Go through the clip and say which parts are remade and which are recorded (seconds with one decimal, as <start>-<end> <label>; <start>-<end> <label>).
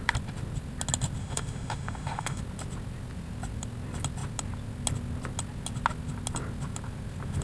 0.0-1.2 recorded; 1.2-2.4 remade; 2.4-7.4 recorded